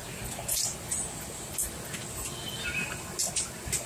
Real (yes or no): yes